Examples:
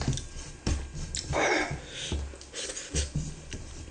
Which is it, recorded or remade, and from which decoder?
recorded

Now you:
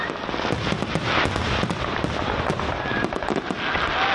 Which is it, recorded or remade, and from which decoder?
recorded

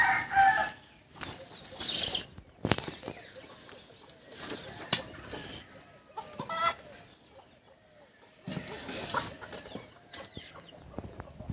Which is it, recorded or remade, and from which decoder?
recorded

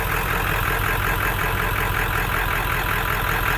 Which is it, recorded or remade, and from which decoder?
recorded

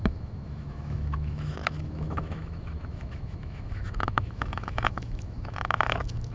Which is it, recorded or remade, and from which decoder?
remade, autoencoder, DAC-VAE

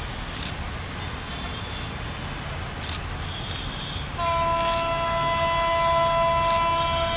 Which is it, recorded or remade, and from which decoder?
recorded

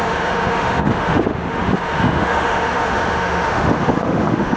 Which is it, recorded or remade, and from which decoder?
remade, autoencoder, DAC-VAE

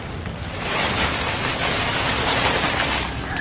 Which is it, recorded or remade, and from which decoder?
recorded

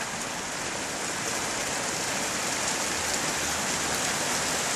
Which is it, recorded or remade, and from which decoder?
recorded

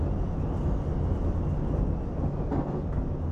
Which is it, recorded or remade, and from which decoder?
recorded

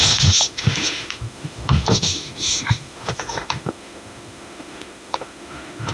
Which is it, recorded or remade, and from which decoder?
remade, autoencoder, DAC-VAE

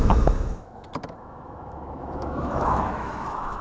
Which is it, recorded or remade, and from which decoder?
remade, autoencoder, DAC-VAE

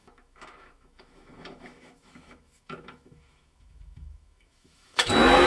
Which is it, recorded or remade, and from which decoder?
remade, autoencoder, DAC-VAE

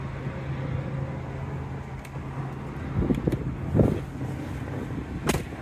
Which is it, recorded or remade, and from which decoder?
recorded